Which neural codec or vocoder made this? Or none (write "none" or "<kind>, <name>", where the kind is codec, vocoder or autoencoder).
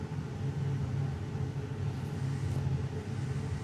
none